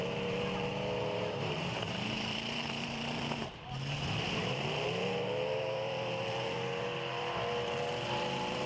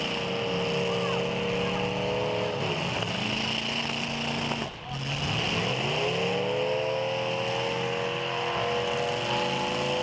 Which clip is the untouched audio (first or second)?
second